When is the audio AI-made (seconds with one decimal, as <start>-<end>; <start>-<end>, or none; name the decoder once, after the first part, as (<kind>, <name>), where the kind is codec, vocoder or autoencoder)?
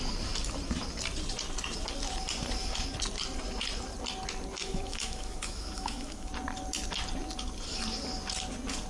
4.6-6.3 (autoencoder, DAC-VAE)